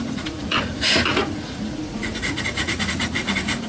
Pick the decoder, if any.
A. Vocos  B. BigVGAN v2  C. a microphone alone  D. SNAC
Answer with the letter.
A